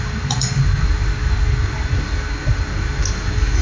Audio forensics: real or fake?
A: real